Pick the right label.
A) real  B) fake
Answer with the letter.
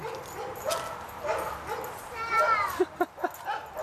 A